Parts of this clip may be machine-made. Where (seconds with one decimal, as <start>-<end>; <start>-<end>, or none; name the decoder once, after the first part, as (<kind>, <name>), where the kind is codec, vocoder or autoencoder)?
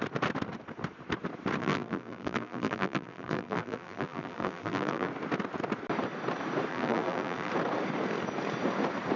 1.6-5.1 (vocoder, BigVGAN v2); 6.7-7.5